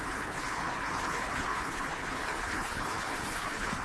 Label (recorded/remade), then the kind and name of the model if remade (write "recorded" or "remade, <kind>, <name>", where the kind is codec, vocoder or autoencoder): remade, codec, HILCodec